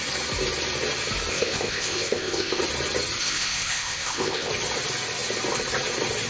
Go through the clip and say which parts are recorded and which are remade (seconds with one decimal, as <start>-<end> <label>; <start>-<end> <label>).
0.0-1.3 recorded; 1.3-2.6 remade; 2.6-3.2 recorded; 3.2-4.5 remade; 4.5-6.3 recorded